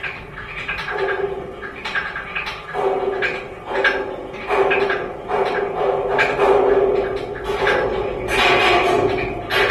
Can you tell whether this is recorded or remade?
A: recorded